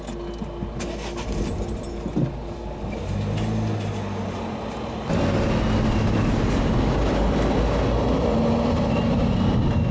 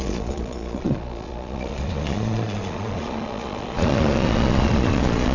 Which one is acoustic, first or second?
first